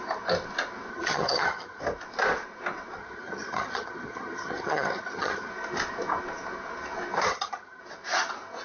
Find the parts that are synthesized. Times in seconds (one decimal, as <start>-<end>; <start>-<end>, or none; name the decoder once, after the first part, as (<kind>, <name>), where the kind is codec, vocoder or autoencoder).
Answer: 0.9-1.8 (vocoder, HiFi-GAN); 3.0-5.5; 7.3-7.8